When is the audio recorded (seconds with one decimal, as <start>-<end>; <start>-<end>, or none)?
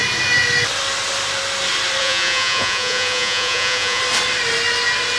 0.0-2.0; 4.0-5.2